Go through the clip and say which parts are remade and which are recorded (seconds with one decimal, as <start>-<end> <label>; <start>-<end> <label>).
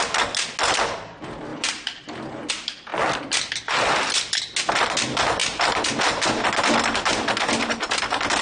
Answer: 0.0-1.5 recorded; 1.5-2.5 remade; 2.5-5.4 recorded; 5.4-6.0 remade; 6.0-8.4 recorded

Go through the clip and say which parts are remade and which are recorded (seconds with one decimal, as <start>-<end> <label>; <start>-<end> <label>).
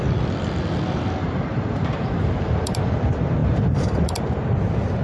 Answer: 0.0-1.2 recorded; 1.2-2.9 remade; 2.9-3.4 recorded; 3.4-4.2 remade; 4.2-5.0 recorded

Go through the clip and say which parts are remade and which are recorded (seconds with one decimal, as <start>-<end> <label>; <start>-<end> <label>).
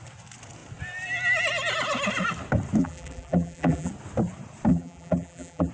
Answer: 0.0-2.8 recorded; 2.8-3.9 remade; 3.9-4.7 recorded; 4.7-5.7 remade